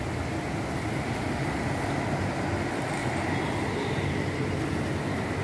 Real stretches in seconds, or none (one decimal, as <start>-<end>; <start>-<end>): 0.0-5.4